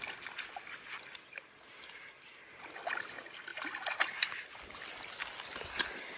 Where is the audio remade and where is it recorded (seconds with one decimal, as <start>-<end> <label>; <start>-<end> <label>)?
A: 0.0-6.2 recorded